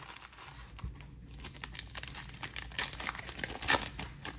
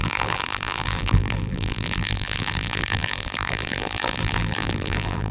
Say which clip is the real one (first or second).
first